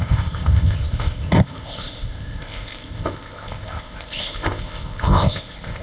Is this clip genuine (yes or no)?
no